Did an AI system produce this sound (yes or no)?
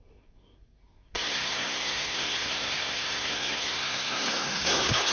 yes